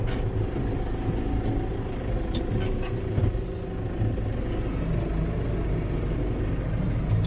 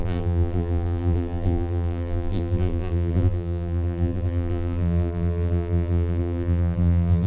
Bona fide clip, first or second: first